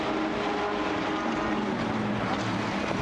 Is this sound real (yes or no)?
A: yes